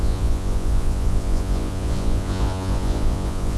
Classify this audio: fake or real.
fake